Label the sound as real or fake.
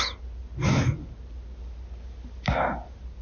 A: real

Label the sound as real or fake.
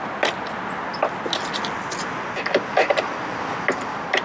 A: real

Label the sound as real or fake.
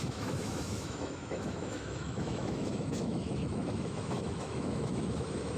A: fake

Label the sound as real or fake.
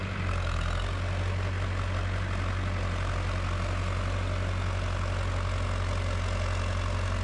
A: real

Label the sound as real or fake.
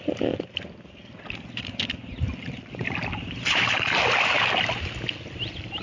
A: real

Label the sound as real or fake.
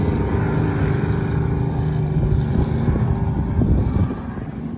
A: real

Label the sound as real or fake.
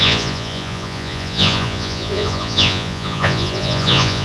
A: fake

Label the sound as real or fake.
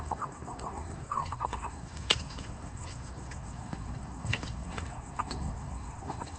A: fake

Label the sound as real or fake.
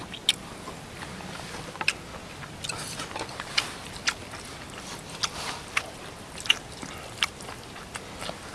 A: real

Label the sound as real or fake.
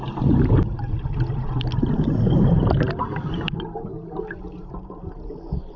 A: real